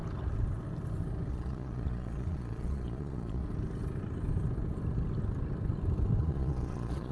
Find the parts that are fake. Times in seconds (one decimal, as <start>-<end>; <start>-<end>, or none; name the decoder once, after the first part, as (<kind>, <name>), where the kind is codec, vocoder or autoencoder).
1.3-3.4 (vocoder, Vocos); 6.2-7.1